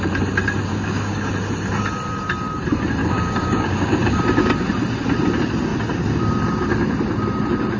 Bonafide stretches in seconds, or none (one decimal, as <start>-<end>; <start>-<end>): 0.0-0.7; 1.3-3.0; 4.2-7.8